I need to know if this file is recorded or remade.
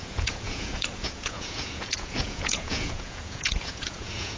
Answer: remade